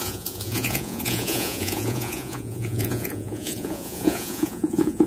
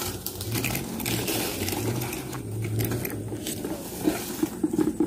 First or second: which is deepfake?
first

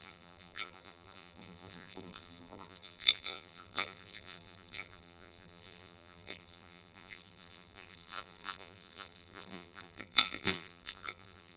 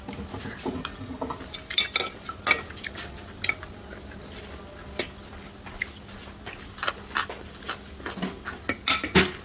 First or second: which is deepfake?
first